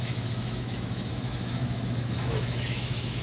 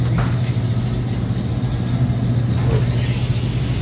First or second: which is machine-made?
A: first